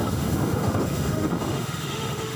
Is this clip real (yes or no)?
no